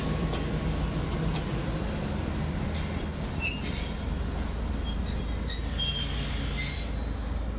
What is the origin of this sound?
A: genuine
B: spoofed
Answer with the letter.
A